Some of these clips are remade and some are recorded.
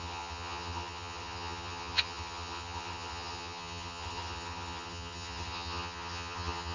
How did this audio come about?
remade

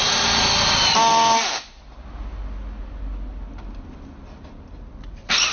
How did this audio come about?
recorded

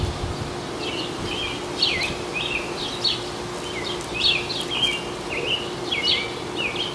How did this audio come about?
recorded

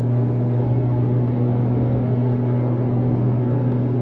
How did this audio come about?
remade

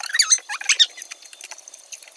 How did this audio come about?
recorded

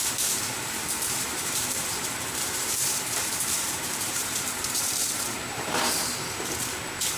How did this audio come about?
remade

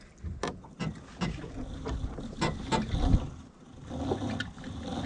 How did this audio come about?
recorded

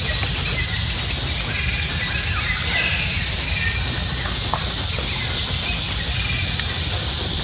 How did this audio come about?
recorded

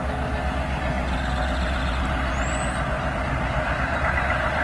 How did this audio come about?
recorded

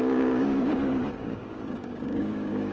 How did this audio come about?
remade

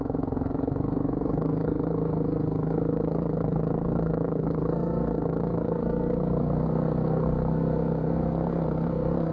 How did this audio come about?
remade